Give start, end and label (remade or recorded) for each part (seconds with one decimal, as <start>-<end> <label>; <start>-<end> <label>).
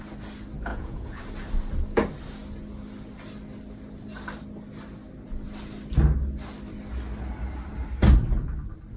0.0-0.7 recorded; 0.7-1.2 remade; 1.2-9.0 recorded